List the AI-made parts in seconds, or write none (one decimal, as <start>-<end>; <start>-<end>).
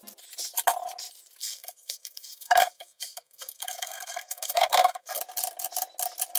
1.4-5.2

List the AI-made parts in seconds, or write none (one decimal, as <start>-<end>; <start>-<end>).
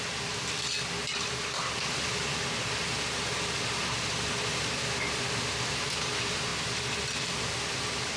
none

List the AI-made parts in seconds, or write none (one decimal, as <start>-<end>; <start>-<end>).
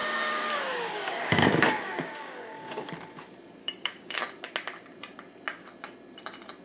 0.0-2.9; 3.6-4.2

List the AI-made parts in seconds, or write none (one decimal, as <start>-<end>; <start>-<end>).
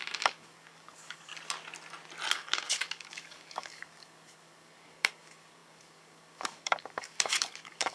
0.0-1.3; 2.3-7.9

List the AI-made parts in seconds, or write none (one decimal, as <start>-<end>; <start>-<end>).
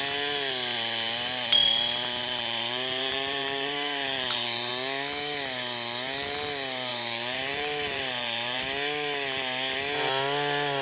2.2-4.7; 6.9-8.6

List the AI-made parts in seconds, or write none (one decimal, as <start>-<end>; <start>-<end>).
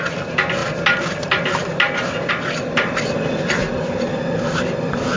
none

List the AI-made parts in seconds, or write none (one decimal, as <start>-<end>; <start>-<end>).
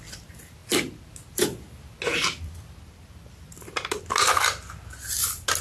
none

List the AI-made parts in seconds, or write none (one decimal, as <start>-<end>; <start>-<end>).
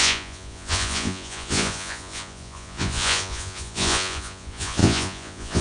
0.0-5.6